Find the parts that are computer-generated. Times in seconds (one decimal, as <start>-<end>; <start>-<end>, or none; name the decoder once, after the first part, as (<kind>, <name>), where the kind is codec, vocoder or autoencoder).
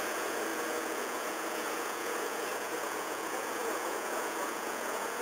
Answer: 0.0-5.2 (vocoder, Vocos)